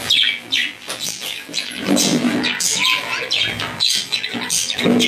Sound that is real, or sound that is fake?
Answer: fake